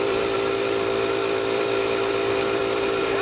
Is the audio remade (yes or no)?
yes